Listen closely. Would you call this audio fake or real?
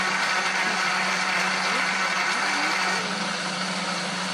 real